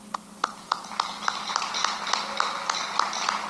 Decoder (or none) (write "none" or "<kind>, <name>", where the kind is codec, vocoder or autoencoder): none